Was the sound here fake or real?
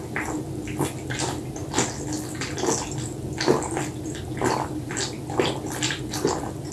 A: real